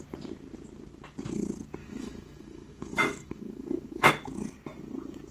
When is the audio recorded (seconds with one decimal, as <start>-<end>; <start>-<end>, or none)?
0.0-1.8; 4.1-5.3